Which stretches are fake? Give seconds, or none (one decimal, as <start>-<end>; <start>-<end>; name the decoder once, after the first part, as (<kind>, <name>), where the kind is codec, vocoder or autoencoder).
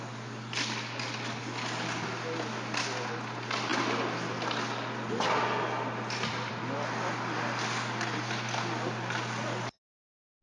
none